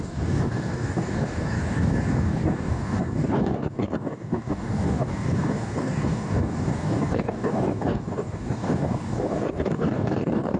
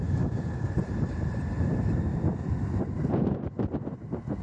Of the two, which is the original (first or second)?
second